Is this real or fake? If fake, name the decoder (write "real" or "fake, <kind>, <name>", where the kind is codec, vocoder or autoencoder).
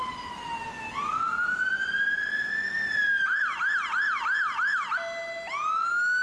real